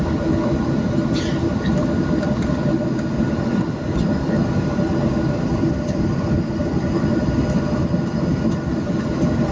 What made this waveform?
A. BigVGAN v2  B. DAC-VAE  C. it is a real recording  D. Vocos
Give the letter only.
C